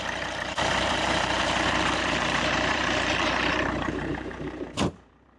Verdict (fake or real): fake